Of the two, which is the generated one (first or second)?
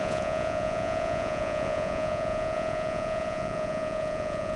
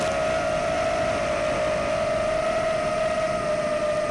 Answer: first